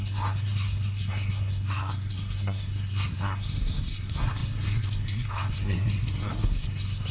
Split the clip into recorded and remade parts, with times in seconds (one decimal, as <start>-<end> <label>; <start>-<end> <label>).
0.0-7.1 remade